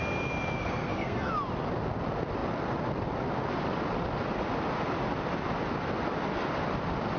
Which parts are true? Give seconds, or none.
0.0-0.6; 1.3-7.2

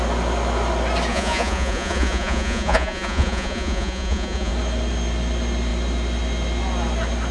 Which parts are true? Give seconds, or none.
0.0-1.1; 4.5-7.3

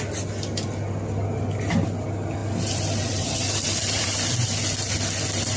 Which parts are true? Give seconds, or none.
0.0-2.4; 4.3-5.6

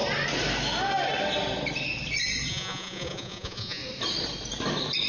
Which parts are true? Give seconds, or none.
0.0-2.5; 3.8-5.1

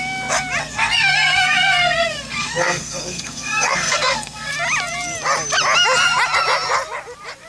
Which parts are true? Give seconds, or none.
0.0-0.6; 4.5-7.5

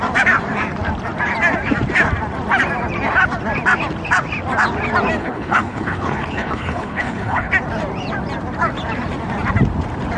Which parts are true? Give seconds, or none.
0.0-5.2; 7.5-10.2